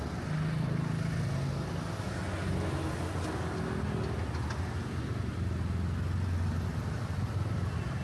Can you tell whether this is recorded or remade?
recorded